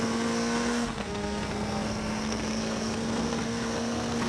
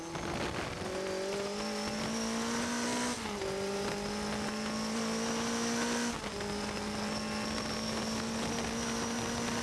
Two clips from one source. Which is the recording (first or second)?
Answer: second